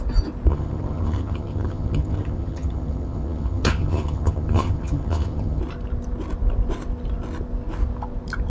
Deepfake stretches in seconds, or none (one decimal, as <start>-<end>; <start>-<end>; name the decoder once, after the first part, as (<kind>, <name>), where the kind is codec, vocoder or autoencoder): 0.5-5.6 (vocoder, HiFi-GAN)